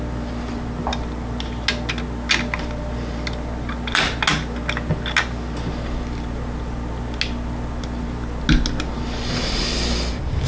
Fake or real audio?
real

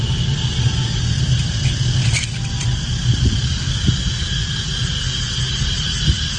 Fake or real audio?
real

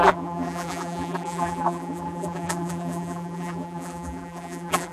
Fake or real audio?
fake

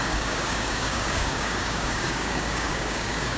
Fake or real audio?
fake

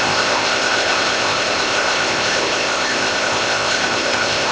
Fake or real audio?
fake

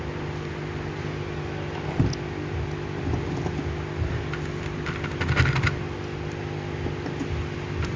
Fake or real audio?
real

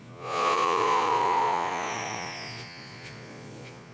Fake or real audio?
fake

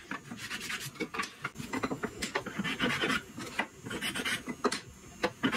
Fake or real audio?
real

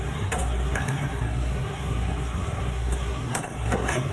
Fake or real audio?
fake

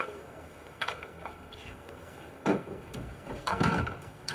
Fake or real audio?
fake